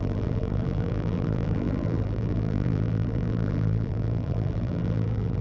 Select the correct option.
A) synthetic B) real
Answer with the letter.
A